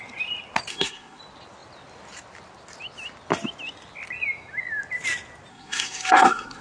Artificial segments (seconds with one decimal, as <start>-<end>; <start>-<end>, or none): 0.7-1.2; 5.5-6.6

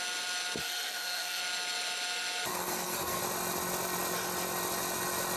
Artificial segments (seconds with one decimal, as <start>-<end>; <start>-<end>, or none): 0.6-1.4; 2.5-3.2

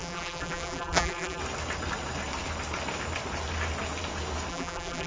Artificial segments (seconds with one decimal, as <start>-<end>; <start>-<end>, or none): 0.0-1.4; 4.5-5.1

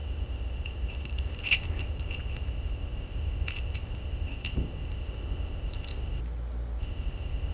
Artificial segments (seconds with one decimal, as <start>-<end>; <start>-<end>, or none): 0.0-6.2; 6.8-7.5

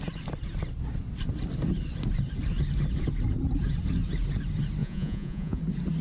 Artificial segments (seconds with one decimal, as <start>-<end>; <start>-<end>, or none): 4.8-5.6

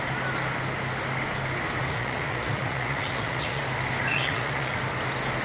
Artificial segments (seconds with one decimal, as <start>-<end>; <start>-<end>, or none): 1.8-3.6; 4.1-4.8

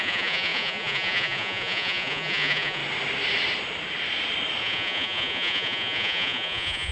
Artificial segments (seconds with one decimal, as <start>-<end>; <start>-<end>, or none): 0.0-2.8; 4.6-6.9